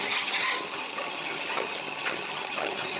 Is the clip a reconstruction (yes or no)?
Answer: yes